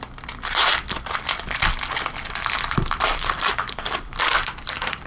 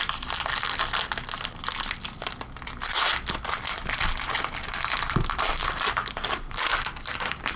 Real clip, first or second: second